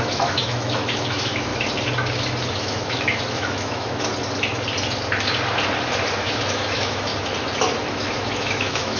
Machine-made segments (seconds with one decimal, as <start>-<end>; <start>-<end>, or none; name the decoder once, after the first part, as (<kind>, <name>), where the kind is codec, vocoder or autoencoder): 0.0-1.5 (autoencoder, DAC-VAE); 2.5-4.1; 6.2-7.1; 7.9-9.0